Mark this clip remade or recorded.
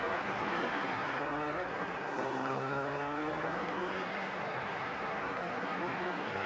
remade